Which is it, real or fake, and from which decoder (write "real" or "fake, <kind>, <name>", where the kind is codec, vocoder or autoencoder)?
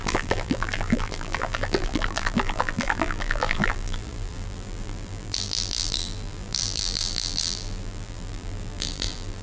fake, vocoder, BigVGAN v2